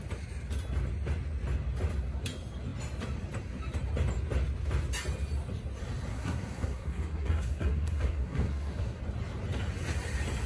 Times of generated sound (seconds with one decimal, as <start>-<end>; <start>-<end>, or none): 6.1-9.0